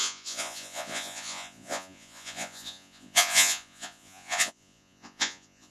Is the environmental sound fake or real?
fake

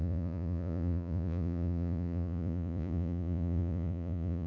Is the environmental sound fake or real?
fake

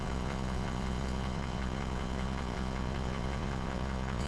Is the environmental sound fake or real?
fake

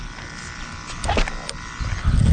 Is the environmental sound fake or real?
real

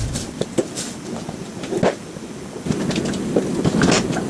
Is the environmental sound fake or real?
real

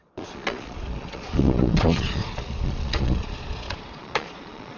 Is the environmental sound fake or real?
fake